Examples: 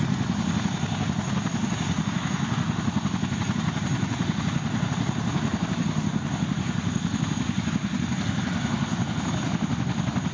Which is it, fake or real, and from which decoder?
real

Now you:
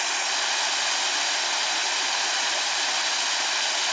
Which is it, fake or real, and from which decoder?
real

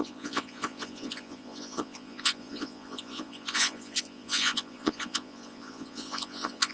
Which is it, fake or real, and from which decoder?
fake, vocoder, Vocos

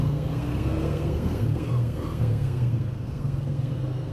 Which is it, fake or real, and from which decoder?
fake, codec, SNAC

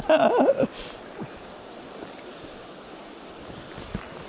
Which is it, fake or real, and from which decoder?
real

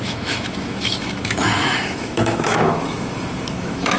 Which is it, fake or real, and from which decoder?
fake, autoencoder, DAC-VAE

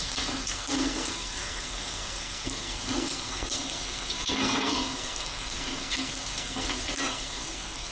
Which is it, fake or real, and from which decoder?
fake, codec, SNAC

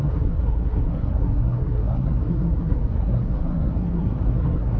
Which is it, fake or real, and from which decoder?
fake, codec, SNAC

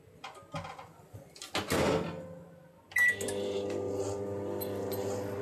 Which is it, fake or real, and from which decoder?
real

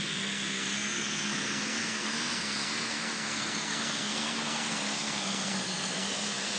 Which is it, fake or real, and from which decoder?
fake, codec, SNAC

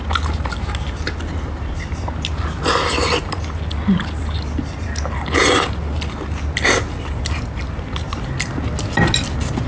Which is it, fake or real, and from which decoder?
real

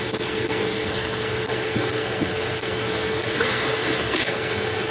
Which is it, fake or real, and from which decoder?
fake, codec, SNAC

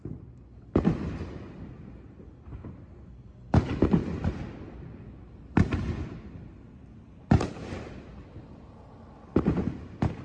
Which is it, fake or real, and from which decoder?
real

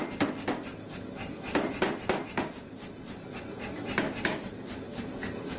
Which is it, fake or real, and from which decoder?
real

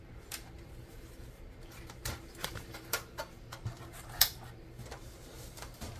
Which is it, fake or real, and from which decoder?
fake, vocoder, BigVGAN v2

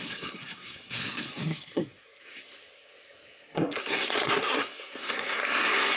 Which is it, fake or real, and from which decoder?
fake, codec, SNAC